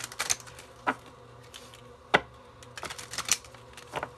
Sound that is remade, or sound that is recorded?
recorded